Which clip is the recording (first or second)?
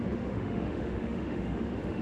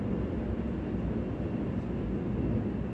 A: second